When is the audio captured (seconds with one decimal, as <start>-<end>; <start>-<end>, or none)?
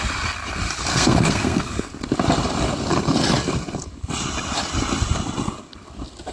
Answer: 0.0-0.9; 1.8-6.3